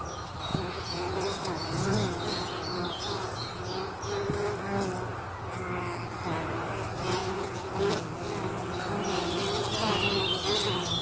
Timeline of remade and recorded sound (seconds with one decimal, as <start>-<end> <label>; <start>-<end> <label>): 0.0-0.5 recorded; 0.5-3.6 remade; 3.6-7.2 recorded; 7.2-7.7 remade; 7.7-11.0 recorded